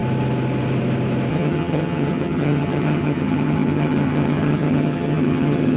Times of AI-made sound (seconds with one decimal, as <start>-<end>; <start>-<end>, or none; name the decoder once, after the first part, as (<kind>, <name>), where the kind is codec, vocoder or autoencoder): 1.3-5.8 (vocoder, HiFi-GAN)